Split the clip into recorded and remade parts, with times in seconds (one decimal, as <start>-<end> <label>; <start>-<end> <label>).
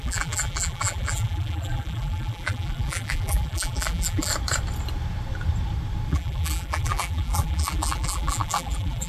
0.0-4.3 remade; 4.3-6.1 recorded; 6.1-9.1 remade